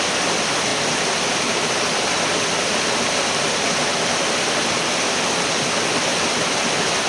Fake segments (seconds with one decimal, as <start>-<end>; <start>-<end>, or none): 0.7-2.0